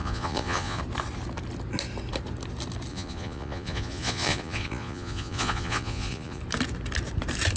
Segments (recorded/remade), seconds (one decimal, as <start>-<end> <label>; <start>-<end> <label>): 0.0-0.8 remade; 0.8-2.9 recorded; 2.9-6.4 remade; 6.4-7.6 recorded